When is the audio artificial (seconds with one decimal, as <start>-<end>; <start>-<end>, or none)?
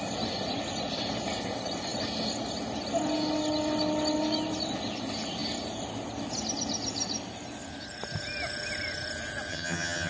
9.5-10.1